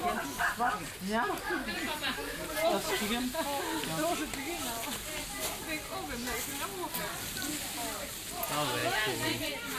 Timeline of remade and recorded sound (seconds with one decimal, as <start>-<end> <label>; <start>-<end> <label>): 0.0-9.8 recorded